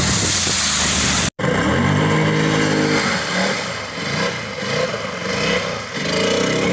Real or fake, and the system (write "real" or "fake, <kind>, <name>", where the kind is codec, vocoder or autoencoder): real